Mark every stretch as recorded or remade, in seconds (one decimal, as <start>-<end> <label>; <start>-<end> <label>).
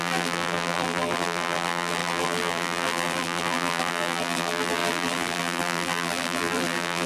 0.0-7.1 remade